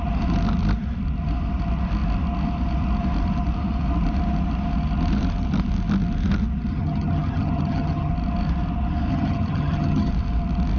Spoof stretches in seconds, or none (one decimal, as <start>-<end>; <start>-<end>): 6.7-8.1; 9.1-10.1